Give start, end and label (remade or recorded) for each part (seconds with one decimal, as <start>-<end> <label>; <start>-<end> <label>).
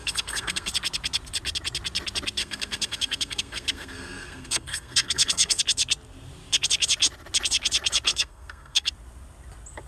0.0-0.7 remade; 0.7-2.4 recorded; 2.4-5.6 remade; 5.6-8.1 recorded; 8.1-8.9 remade; 8.9-9.9 recorded